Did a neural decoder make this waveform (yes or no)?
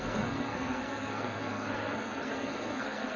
yes